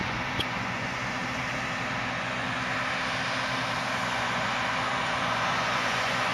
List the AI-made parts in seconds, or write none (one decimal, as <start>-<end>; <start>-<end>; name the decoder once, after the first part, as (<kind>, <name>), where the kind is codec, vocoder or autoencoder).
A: 0.0-1.2 (vocoder, Vocos); 2.0-2.7; 4.0-6.3